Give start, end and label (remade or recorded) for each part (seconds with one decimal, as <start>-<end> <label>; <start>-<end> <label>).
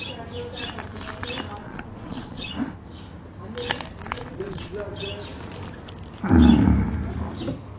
0.0-1.6 recorded; 1.6-2.5 remade; 2.5-4.0 recorded; 4.0-4.7 remade; 4.7-7.8 recorded